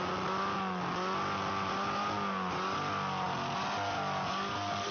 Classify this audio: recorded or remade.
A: recorded